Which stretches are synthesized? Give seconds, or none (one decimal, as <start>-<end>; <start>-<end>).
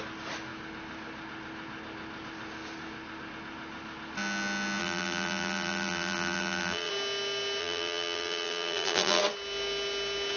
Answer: 4.8-6.9; 7.6-9.2